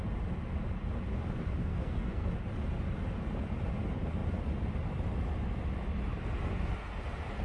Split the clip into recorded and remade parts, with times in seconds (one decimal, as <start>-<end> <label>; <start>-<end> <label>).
0.0-1.6 recorded; 1.6-2.3 remade; 2.3-7.4 recorded